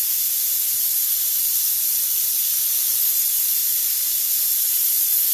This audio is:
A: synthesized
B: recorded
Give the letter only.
B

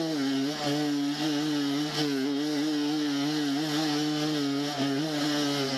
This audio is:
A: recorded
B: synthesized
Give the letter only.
A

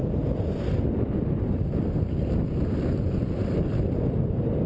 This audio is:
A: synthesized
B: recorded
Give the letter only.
B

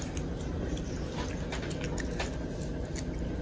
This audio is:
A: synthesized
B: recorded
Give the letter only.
B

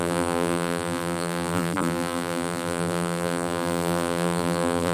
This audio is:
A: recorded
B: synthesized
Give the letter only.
B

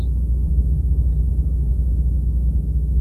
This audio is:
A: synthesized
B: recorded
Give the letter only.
B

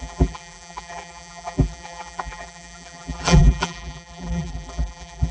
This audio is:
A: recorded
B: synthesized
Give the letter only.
B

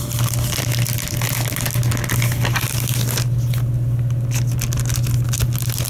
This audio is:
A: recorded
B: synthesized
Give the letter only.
A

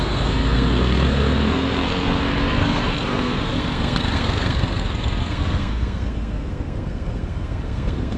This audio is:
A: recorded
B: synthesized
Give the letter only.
B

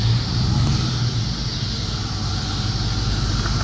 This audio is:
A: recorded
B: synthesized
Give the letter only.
A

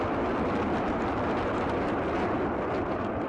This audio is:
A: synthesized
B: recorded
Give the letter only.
B